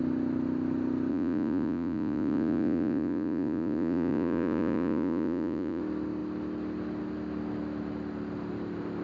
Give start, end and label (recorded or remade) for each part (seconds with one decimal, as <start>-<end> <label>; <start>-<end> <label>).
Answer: 0.0-1.1 recorded; 1.1-5.8 remade; 5.8-9.0 recorded